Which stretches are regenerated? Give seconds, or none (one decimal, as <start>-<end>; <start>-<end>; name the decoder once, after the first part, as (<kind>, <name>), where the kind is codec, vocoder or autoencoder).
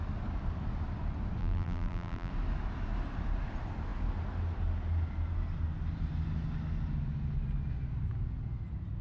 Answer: 1.4-2.3 (vocoder, BigVGAN v2)